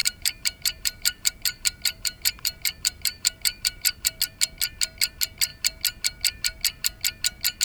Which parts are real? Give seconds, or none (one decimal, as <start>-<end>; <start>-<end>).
4.2-7.6